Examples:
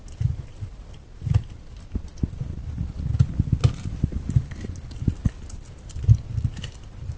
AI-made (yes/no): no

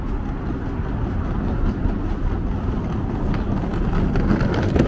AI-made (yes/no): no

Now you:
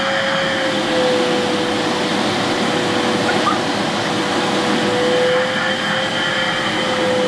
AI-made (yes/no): no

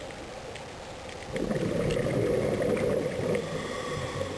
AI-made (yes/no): no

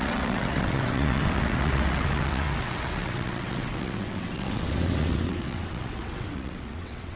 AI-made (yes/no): yes